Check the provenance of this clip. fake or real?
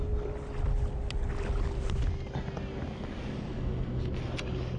real